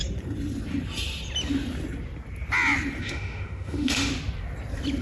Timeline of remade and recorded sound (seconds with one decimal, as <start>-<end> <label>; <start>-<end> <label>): 0.0-3.0 recorded; 3.0-4.1 remade; 4.1-5.0 recorded